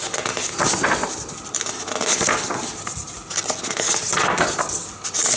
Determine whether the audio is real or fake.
real